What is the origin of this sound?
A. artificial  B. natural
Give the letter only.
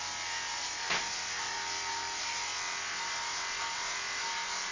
B